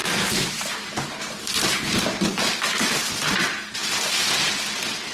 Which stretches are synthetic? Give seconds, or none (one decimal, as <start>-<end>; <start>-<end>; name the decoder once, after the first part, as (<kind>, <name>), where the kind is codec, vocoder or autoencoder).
0.0-3.1 (vocoder, BigVGAN v2)